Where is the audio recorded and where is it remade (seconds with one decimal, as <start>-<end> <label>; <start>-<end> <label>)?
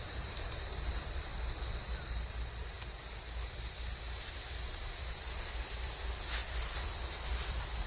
0.0-1.3 remade; 1.3-4.0 recorded; 4.0-7.9 remade